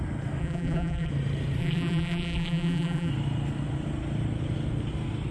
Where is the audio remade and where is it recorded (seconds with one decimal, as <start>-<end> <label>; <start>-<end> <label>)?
0.0-0.4 recorded; 0.4-1.1 remade; 1.1-1.6 recorded; 1.6-3.1 remade; 3.1-5.3 recorded